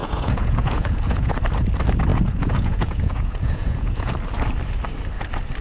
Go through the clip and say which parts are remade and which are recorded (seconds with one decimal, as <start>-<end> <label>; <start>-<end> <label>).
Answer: 0.0-1.3 remade; 1.3-2.1 recorded; 2.1-4.1 remade; 4.1-5.6 recorded